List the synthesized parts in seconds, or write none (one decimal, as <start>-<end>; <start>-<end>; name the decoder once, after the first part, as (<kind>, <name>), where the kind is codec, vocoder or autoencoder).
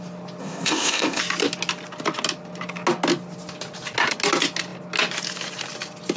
0.4-1.2 (codec, ZipCodec)